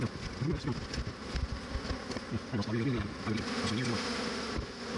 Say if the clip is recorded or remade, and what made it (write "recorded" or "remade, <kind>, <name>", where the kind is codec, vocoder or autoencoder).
recorded